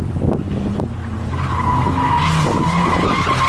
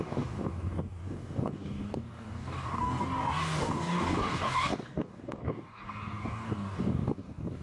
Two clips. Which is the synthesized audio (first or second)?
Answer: second